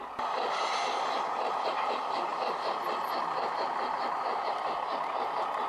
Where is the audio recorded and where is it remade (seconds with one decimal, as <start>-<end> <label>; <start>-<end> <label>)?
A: 0.0-5.7 recorded